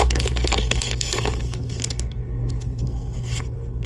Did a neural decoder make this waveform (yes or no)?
yes